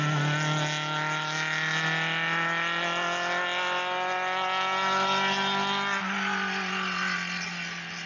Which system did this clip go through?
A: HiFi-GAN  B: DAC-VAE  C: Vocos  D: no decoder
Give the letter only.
D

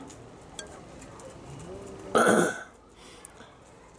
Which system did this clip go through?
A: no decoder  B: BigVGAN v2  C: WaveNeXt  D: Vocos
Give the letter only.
A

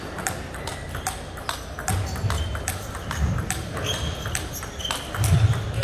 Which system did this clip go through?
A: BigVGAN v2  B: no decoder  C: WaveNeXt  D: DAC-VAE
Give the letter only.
B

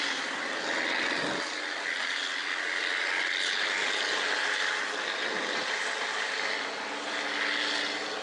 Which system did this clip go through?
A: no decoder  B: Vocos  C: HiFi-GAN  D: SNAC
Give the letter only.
A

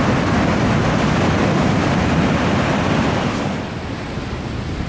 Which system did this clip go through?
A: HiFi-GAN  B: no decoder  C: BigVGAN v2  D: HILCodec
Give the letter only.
B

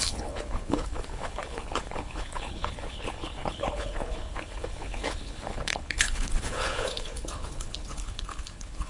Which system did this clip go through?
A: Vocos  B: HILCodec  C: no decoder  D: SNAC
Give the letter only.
B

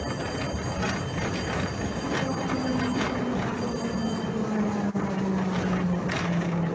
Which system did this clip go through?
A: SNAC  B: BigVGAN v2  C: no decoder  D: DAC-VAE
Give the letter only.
C